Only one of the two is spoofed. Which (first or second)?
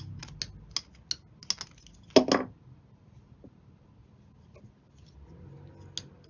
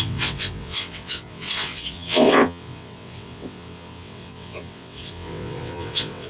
second